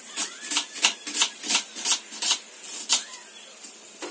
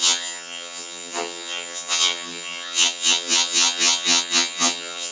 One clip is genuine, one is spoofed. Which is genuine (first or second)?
first